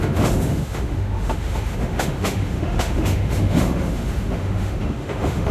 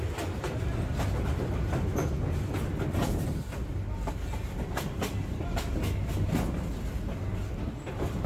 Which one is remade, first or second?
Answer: first